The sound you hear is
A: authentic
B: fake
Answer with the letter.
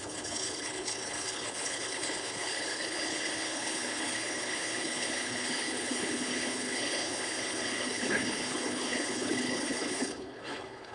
B